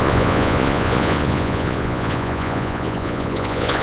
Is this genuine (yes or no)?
no